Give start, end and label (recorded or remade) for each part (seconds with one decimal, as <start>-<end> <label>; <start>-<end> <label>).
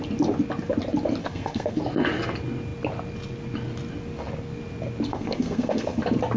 0.0-1.2 recorded; 1.2-1.8 remade; 1.8-5.1 recorded; 5.1-6.0 remade; 6.0-6.4 recorded